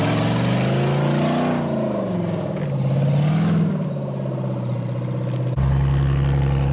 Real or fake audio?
real